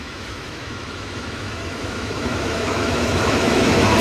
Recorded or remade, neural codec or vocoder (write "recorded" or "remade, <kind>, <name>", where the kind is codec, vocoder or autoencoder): remade, autoencoder, DAC-VAE